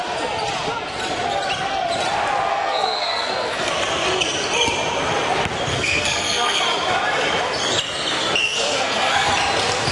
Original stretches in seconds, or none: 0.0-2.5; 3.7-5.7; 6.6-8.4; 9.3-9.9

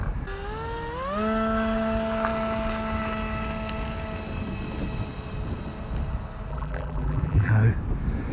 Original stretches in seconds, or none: 0.0-6.5; 7.5-8.3

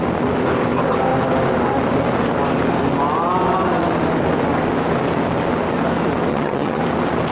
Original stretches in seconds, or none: 0.0-6.3; 6.8-7.3

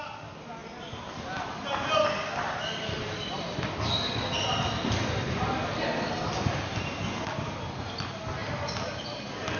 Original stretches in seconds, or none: 0.0-0.6; 3.7-9.6

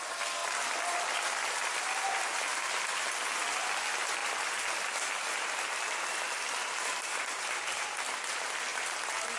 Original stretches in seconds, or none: 0.0-4.2; 7.6-9.4

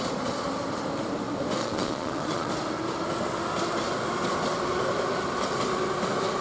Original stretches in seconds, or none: 0.0-1.6; 2.5-6.4

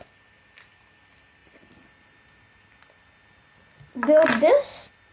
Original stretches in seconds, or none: 0.0-5.1

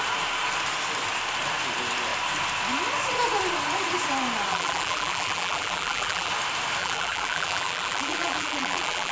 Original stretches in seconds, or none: 0.0-4.5; 6.3-6.8